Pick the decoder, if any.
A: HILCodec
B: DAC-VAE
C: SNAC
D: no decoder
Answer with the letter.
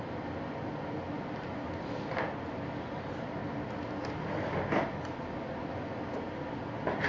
D